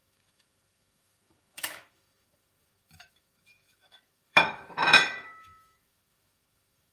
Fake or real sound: fake